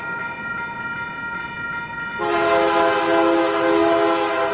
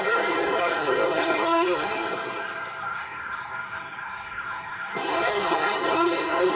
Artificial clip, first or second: second